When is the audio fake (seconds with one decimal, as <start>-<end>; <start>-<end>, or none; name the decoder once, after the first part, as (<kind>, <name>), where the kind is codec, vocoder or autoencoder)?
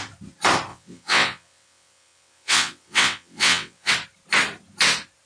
0.7-3.9 (vocoder, WaveNeXt)